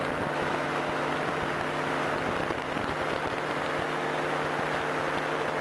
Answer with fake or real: real